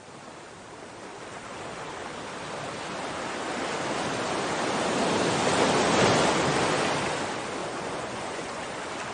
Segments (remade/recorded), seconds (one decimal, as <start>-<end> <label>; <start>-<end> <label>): 0.0-7.6 recorded; 7.6-8.6 remade; 8.6-9.1 recorded